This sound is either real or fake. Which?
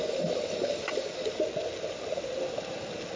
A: real